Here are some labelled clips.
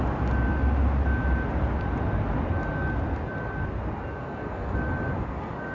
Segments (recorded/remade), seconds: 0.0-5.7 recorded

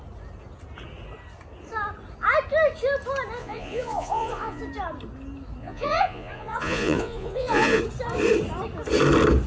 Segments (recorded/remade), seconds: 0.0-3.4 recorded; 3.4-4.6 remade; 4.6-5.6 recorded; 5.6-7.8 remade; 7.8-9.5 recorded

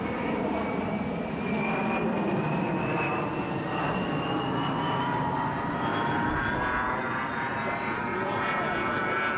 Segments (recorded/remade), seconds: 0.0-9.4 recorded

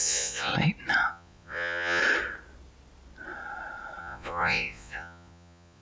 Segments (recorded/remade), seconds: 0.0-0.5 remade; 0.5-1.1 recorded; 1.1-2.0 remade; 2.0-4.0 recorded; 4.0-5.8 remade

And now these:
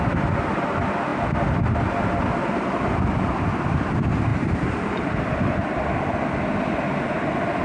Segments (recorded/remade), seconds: 0.0-7.6 recorded

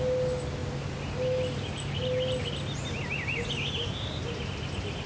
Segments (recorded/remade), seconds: 0.0-5.1 recorded